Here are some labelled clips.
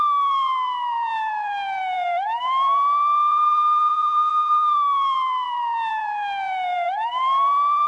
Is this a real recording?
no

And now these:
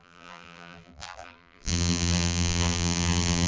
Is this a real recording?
no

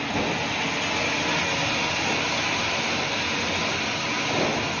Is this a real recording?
yes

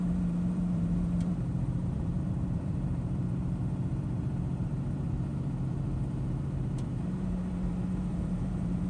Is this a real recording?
no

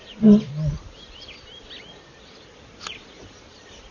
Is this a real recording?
no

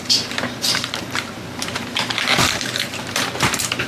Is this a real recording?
no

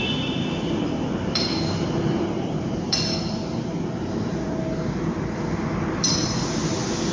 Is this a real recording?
no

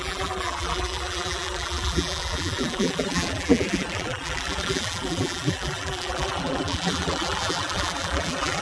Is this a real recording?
no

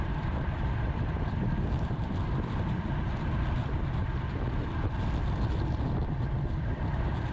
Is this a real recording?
no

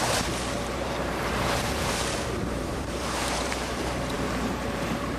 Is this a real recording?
no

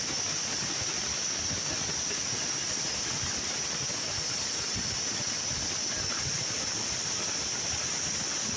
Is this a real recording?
yes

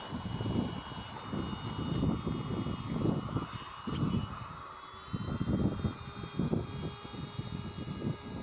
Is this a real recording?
yes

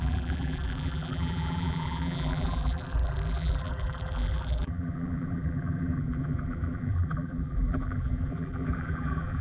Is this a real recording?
no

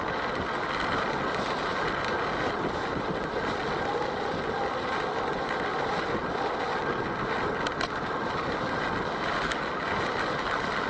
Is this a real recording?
yes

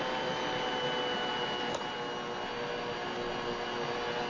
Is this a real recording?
yes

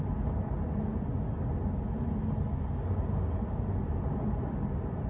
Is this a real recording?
yes